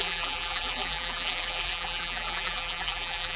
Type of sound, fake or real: fake